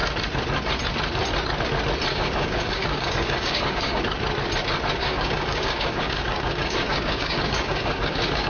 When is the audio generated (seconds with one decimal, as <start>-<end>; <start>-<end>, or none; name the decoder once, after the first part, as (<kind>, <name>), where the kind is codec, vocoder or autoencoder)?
2.1-4.0 (codec, DAC); 5.0-8.5